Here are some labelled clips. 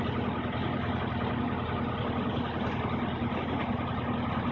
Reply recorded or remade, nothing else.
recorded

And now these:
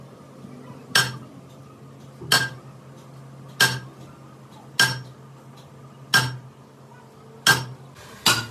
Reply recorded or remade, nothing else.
recorded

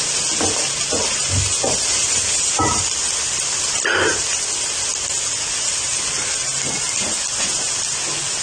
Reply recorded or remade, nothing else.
recorded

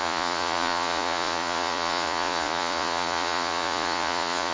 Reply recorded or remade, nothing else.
remade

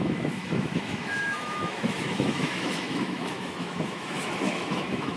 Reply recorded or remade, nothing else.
remade